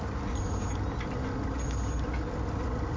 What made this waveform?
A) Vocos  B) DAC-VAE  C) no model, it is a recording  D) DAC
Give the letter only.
C